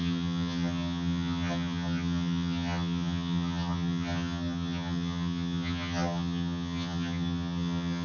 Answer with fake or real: fake